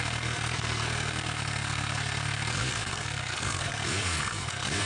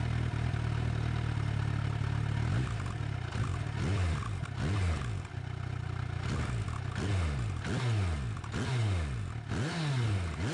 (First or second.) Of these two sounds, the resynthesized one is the first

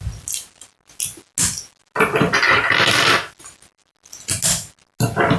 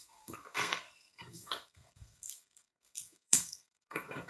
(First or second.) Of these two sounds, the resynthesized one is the second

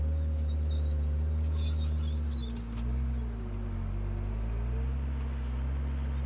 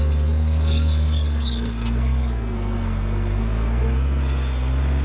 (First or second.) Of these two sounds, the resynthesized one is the second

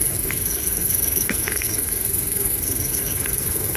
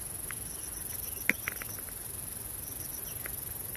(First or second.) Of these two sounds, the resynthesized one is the first